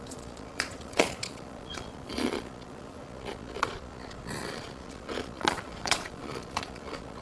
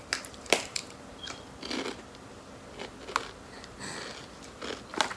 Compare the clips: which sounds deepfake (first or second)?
first